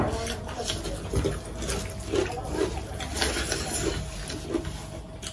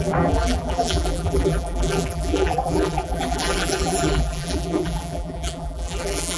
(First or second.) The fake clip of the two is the second